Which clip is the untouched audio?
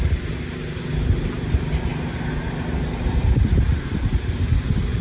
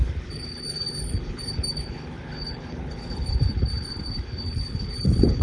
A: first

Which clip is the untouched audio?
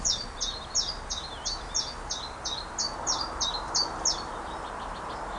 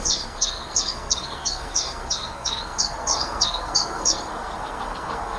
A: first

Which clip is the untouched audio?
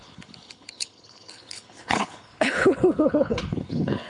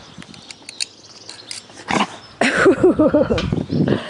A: second